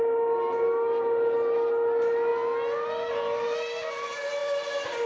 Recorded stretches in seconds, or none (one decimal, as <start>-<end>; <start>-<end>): 0.0-5.1